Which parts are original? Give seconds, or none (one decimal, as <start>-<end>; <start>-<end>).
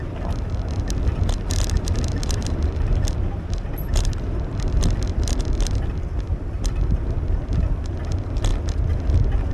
0.0-2.2; 6.7-9.5